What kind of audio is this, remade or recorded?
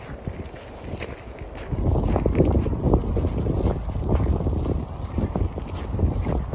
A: recorded